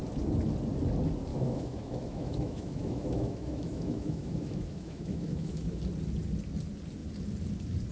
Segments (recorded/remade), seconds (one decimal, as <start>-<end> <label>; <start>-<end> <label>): 0.0-1.3 recorded; 1.3-5.8 remade; 5.8-7.9 recorded